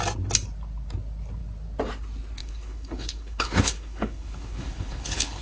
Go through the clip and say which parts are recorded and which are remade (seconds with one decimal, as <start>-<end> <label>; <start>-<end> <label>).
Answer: 0.0-2.4 recorded; 2.4-5.4 remade